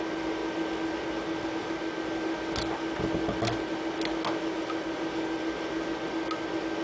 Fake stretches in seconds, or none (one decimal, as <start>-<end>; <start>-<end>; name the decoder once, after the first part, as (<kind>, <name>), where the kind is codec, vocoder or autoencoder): none